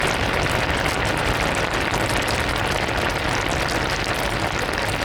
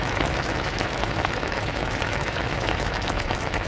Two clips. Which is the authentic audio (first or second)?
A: first